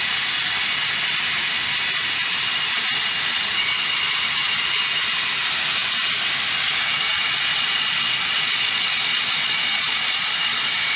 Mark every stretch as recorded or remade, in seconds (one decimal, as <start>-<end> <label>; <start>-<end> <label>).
0.0-7.5 recorded; 7.5-11.0 remade